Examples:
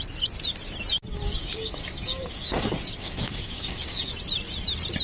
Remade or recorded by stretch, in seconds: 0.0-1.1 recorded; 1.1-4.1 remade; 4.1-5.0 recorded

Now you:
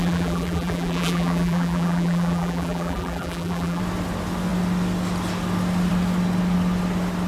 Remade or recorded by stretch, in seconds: 0.0-3.8 remade; 3.8-7.3 recorded

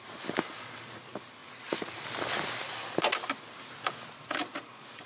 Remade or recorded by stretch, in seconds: 0.0-5.1 recorded

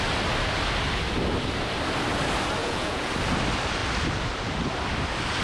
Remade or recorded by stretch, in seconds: 0.0-2.6 recorded; 2.6-3.1 remade; 3.1-5.4 recorded

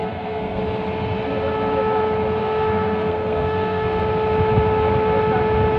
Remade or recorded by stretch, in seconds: 0.0-0.6 remade; 0.6-2.4 recorded; 2.4-4.0 remade; 4.0-5.8 recorded